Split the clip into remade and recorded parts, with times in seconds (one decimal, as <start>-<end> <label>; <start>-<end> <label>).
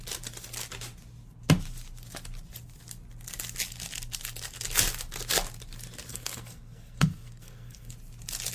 0.0-6.1 recorded; 6.1-7.9 remade; 7.9-8.5 recorded